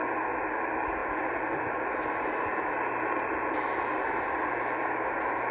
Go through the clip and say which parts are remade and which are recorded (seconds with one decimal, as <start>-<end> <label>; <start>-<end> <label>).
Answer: 0.0-5.5 recorded